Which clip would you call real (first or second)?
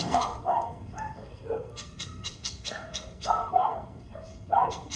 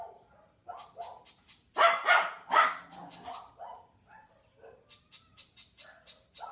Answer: second